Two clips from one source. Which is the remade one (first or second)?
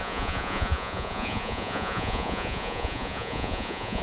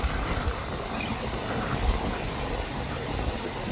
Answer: first